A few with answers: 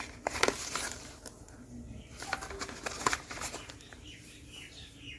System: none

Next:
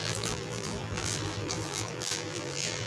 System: vocoder, BigVGAN v2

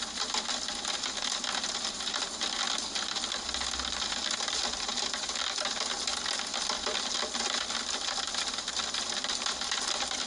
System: none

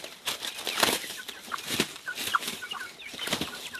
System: vocoder, BigVGAN v2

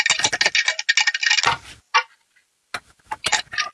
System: none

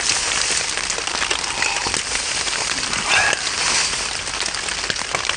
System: none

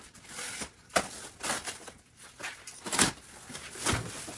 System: vocoder, BigVGAN v2